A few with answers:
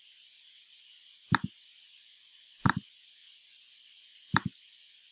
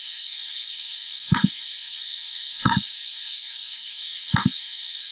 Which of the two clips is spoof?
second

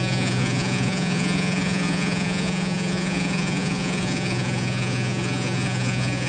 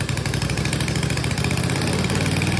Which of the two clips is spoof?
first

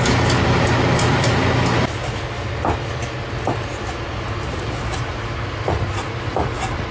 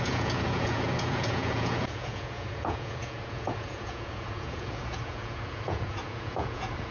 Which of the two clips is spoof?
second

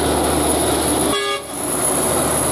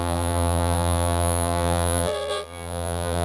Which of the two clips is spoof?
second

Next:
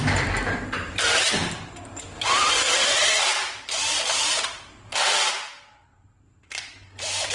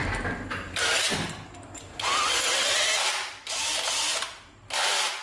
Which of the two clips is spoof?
first